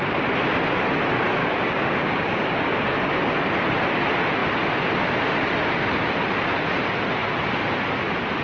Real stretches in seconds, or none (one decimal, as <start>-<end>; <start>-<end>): 0.0-1.4; 3.2-8.4